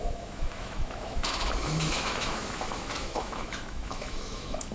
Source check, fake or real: fake